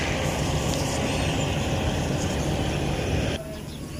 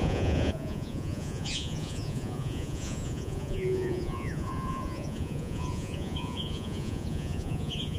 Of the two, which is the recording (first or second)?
first